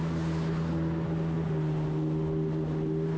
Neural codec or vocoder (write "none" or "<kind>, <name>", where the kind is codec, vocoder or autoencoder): none